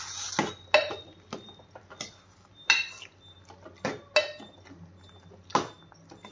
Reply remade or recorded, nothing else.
recorded